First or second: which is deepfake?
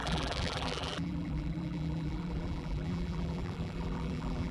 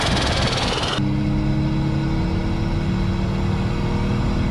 first